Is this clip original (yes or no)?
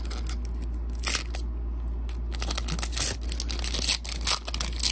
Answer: yes